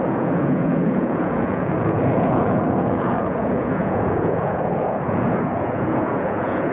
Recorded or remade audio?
remade